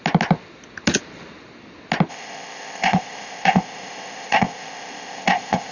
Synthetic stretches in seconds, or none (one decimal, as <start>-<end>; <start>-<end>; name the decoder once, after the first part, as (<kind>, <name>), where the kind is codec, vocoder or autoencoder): 2.1-5.7 (codec, ZipCodec)

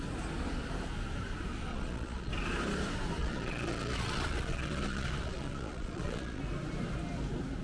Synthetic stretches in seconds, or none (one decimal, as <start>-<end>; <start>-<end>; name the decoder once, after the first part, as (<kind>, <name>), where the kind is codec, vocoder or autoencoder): 1.7-2.3 (vocoder, Vocos); 3.2-6.4

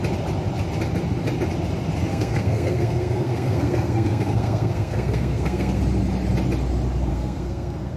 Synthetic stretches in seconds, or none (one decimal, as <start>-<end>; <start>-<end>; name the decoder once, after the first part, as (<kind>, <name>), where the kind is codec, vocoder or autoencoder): 2.1-5.8 (codec, SNAC); 7.1-8.0

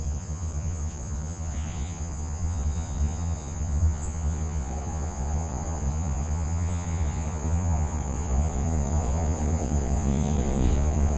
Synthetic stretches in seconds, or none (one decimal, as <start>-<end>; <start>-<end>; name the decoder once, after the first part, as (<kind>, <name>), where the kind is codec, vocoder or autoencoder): 0.0-11.2 (vocoder, Vocos)

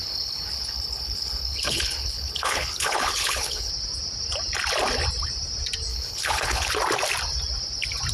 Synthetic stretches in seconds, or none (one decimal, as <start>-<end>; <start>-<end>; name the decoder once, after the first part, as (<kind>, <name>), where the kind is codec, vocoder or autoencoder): 0.0-3.7 (codec, HILCodec); 5.9-6.7

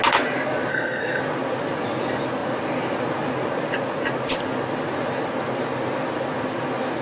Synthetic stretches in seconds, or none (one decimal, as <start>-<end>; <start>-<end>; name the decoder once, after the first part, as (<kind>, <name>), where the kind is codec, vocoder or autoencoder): 0.7-1.2 (codec, SNAC)

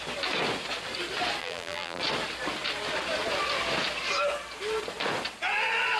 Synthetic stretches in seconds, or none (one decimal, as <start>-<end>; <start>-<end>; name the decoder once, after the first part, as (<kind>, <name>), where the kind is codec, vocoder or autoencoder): 1.4-2.0 (vocoder, BigVGAN v2)

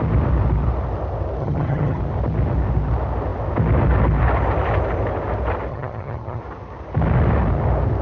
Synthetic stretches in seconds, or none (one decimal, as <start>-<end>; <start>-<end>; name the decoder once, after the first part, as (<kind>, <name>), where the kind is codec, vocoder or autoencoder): 1.4-2.0 (vocoder, HiFi-GAN); 5.7-6.4